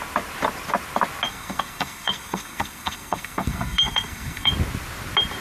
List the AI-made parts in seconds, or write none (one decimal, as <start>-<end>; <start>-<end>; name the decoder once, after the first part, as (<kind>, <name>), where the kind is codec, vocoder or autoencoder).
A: 1.3-4.5 (codec, SNAC)